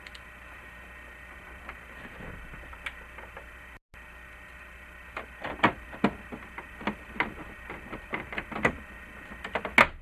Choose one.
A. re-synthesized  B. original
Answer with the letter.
B